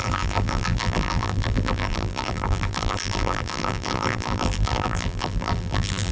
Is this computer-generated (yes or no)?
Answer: yes